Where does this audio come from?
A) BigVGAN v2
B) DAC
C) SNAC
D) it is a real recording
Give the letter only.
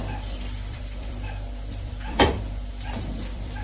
A